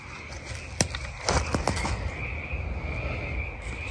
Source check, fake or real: real